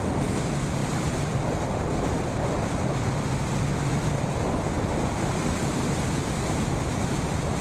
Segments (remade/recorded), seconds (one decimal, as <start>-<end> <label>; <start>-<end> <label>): 0.0-0.8 recorded; 0.8-3.0 remade; 3.0-7.6 recorded